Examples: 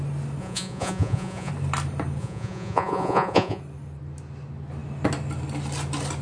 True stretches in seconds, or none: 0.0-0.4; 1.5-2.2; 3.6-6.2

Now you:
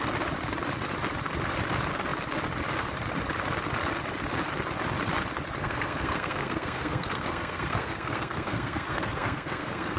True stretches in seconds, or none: 0.0-5.6

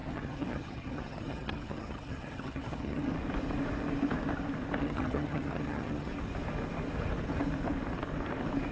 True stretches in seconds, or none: 3.1-4.8; 6.1-8.7

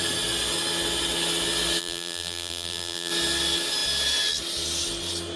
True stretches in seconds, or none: 0.0-1.8; 3.1-5.4

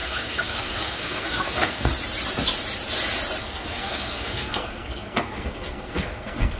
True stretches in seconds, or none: 1.9-3.4

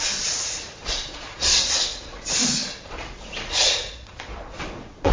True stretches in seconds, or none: none

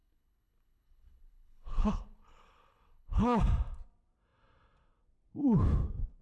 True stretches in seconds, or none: 3.4-6.2

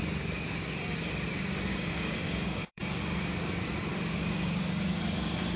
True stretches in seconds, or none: 0.0-1.7; 2.8-3.9; 5.0-5.6